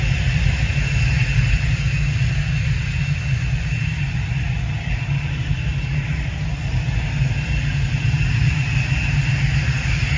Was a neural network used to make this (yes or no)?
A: no